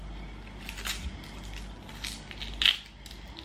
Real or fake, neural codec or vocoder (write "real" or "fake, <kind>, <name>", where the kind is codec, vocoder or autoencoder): real